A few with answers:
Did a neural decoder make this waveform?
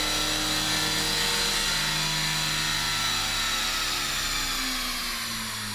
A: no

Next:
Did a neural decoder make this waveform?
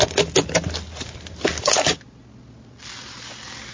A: no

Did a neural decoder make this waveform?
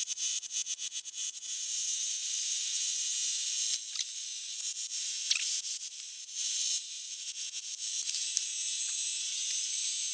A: no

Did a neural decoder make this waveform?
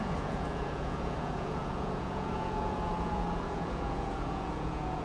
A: yes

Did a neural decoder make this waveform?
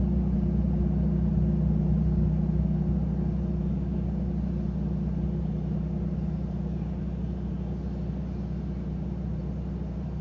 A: no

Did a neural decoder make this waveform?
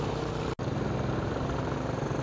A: no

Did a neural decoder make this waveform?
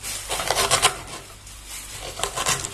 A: no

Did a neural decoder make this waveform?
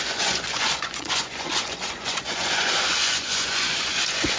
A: yes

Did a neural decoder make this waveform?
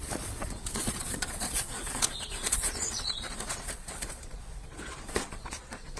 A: yes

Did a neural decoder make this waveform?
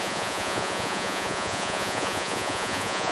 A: yes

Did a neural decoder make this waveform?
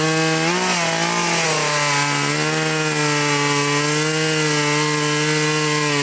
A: no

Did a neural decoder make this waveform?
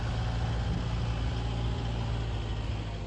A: no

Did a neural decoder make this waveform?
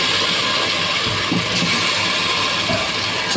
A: no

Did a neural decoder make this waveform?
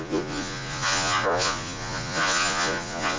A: yes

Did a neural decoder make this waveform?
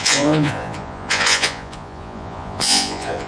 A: yes